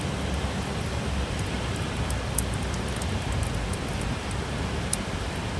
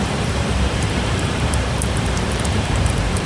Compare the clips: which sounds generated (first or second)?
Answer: second